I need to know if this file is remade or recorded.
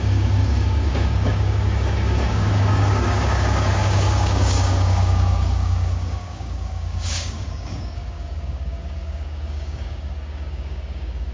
remade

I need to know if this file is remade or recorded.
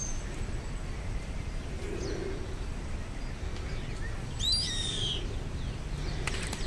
recorded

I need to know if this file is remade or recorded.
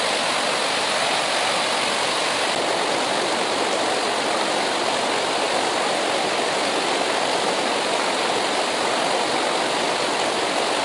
recorded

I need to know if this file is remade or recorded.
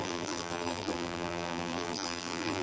remade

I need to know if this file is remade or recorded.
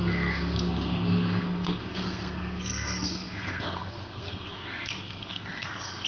remade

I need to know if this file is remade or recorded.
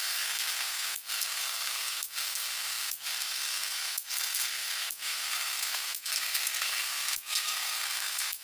remade